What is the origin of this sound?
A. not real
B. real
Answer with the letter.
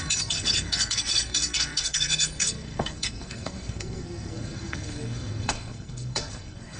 A